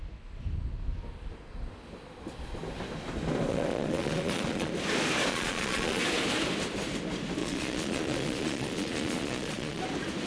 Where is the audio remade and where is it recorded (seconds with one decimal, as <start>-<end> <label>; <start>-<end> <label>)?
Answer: 0.0-3.5 recorded; 3.5-4.7 remade; 4.7-5.3 recorded; 5.3-6.0 remade; 6.0-7.4 recorded; 7.4-9.8 remade; 9.8-10.3 recorded